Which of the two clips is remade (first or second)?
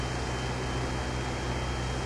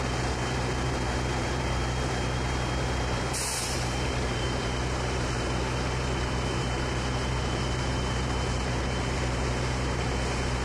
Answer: second